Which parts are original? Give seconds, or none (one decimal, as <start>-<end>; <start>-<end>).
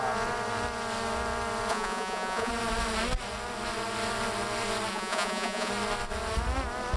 0.0-1.7; 2.5-4.9; 5.7-7.0